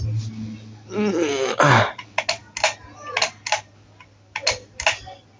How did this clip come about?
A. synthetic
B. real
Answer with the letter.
B